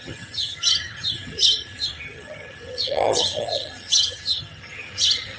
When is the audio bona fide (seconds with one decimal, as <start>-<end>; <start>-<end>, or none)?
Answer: none